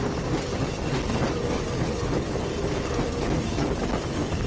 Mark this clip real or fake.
real